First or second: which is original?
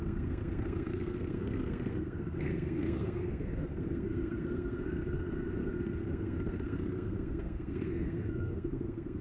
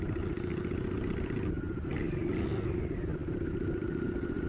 second